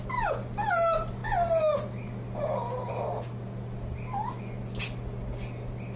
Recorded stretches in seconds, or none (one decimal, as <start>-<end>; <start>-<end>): 0.0-6.0